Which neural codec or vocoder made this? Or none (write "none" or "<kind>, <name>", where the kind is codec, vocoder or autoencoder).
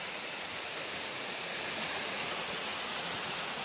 vocoder, Vocos